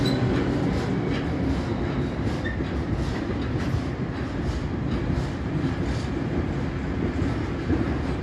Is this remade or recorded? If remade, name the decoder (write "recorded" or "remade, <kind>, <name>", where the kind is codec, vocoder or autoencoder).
recorded